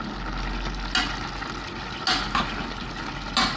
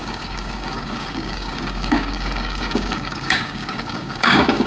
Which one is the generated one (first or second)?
second